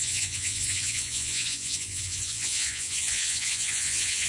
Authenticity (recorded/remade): remade